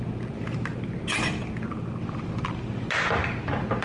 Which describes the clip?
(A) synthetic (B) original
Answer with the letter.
B